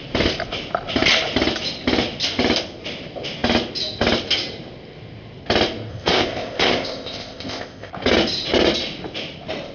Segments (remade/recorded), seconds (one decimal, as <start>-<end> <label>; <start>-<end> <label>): 0.0-5.9 recorded; 5.9-7.9 remade; 7.9-9.7 recorded